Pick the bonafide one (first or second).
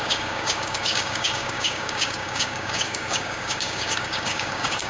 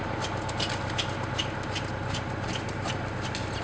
second